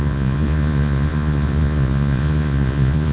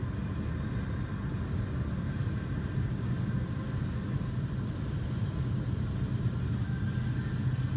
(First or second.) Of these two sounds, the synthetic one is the first